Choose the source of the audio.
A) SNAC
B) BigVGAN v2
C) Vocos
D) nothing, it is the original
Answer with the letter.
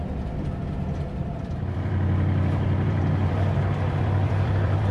B